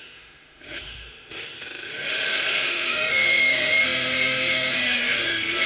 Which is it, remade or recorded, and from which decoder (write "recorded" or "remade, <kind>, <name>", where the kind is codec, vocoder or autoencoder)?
remade, autoencoder, DAC-VAE